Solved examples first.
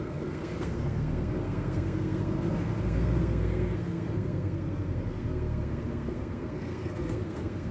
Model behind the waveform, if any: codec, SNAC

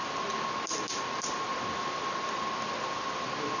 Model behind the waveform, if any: none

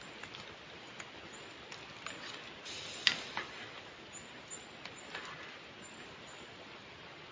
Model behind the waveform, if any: none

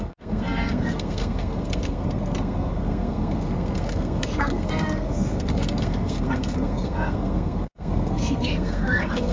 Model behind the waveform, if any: codec, SNAC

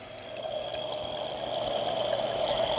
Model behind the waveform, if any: none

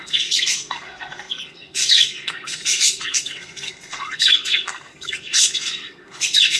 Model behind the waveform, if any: codec, SNAC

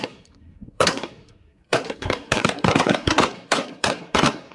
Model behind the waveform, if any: codec, SNAC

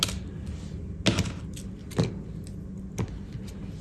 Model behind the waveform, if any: none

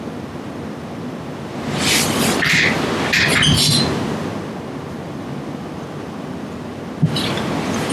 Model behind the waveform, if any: none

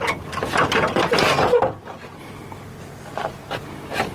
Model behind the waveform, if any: none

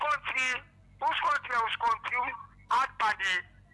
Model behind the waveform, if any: none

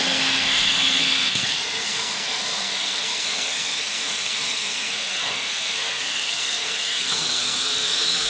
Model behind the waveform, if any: codec, SNAC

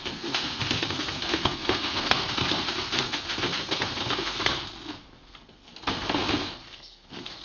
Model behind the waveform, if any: codec, SNAC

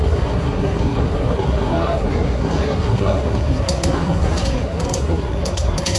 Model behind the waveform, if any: codec, SNAC